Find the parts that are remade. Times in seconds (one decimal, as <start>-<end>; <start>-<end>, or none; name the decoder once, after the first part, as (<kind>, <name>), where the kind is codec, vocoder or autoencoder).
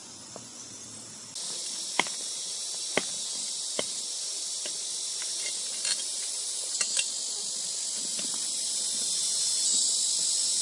0.0-0.7 (vocoder, Vocos); 9.2-9.9